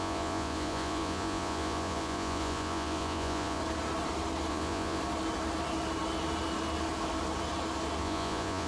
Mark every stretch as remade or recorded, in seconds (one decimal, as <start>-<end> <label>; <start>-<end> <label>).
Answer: 0.0-3.6 remade; 3.6-4.5 recorded; 4.5-5.0 remade; 5.0-8.0 recorded; 8.0-8.7 remade